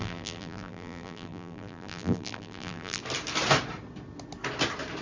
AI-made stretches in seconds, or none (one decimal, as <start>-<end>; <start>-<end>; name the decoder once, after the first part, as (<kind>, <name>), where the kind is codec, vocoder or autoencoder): 0.0-3.0 (vocoder, BigVGAN v2)